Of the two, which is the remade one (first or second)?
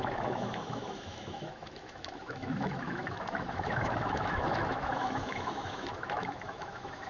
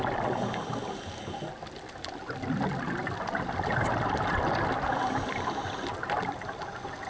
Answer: first